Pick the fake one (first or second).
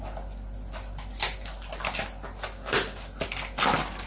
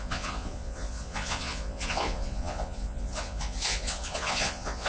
second